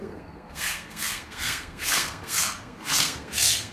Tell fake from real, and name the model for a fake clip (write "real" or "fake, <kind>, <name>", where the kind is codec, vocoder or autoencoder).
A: fake, codec, SNAC